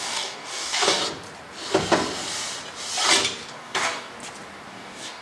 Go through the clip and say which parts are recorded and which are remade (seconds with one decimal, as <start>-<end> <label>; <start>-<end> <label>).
0.0-1.0 remade; 1.0-3.5 recorded; 3.5-4.1 remade; 4.1-4.7 recorded; 4.7-5.2 remade